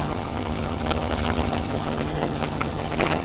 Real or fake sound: fake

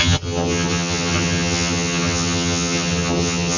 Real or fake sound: fake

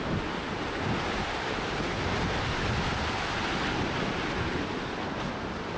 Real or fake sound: real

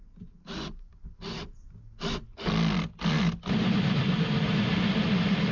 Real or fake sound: real